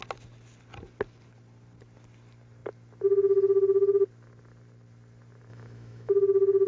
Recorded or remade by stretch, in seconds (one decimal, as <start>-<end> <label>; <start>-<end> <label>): 0.0-5.5 recorded; 5.5-6.1 remade; 6.1-6.7 recorded